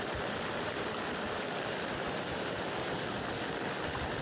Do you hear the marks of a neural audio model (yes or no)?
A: yes